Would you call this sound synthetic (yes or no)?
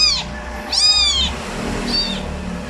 no